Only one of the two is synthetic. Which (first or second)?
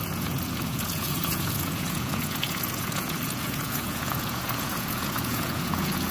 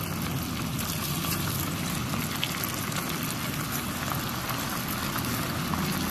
first